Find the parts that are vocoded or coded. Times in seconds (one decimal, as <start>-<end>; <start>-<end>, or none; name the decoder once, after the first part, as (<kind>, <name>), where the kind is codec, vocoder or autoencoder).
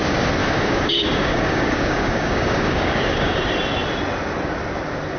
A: 0.4-3.4 (codec, DAC)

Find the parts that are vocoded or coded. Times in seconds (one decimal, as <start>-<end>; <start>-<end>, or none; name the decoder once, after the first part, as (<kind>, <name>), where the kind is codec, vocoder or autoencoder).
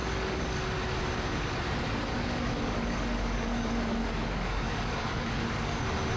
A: 0.0-0.6 (codec, DAC); 2.1-5.8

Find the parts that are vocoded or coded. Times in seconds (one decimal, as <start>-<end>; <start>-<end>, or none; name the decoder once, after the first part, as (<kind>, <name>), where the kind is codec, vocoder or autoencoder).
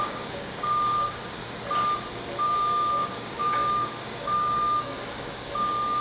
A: 0.0-1.4 (codec, DAC); 2.4-6.0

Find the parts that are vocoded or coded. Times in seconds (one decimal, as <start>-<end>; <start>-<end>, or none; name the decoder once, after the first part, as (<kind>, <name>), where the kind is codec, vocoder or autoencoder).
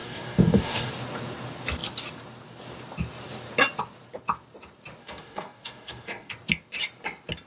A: 0.0-0.9 (codec, DAC); 5.0-6.3